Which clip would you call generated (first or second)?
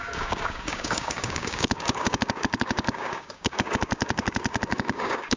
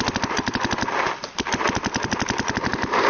first